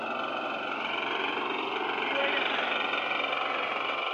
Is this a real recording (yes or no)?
yes